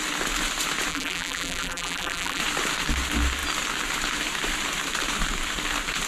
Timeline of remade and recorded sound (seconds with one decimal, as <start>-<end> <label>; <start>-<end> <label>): 0.0-0.9 recorded; 0.9-2.4 remade; 2.4-6.1 recorded